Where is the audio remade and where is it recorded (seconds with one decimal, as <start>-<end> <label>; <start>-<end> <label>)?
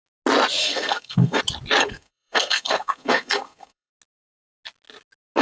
0.0-0.6 recorded; 0.6-1.4 remade; 1.4-1.8 recorded; 1.8-3.9 remade; 3.9-5.4 recorded